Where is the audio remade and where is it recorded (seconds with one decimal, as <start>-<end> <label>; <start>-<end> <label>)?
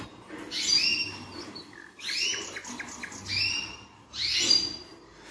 0.0-5.3 recorded